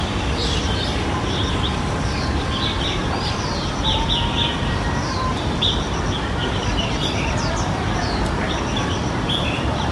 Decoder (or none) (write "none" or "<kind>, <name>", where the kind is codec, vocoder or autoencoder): vocoder, BigVGAN v2